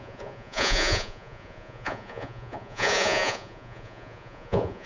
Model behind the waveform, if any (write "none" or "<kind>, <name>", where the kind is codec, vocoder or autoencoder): vocoder, Vocos